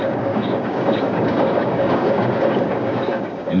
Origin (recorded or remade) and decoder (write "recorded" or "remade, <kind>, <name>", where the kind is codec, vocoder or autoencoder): remade, codec, DAC